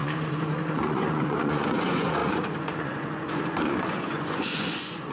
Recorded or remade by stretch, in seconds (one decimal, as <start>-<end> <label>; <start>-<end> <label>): 0.0-5.1 remade